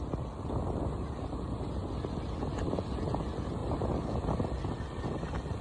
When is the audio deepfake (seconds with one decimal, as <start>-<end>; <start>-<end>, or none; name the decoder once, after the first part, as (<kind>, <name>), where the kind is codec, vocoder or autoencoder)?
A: none